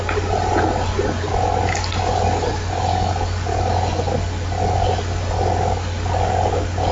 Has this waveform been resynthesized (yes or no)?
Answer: no